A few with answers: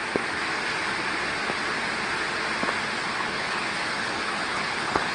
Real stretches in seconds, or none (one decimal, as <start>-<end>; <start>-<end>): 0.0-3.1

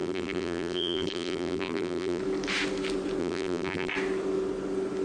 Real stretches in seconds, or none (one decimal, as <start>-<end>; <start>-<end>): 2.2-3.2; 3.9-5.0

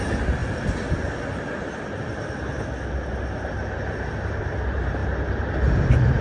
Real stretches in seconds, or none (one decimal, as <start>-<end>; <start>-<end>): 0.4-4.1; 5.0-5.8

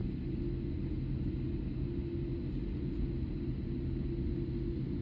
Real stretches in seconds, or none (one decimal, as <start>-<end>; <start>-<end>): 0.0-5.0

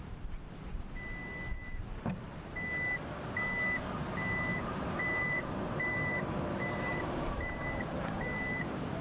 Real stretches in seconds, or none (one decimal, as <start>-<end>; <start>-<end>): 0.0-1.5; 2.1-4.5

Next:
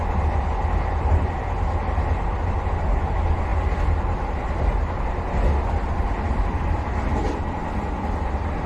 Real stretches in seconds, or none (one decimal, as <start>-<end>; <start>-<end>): 0.0-8.7